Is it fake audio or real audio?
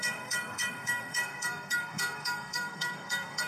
fake